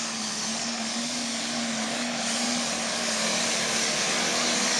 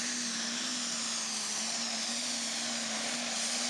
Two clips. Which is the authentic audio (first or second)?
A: second